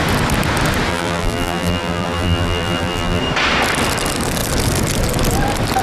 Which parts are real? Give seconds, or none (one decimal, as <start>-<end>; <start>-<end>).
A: 0.0-0.9; 3.2-5.8